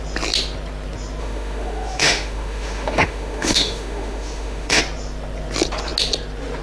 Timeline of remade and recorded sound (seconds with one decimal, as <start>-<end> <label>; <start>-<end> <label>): 0.0-1.2 recorded; 1.2-4.8 remade; 4.8-6.6 recorded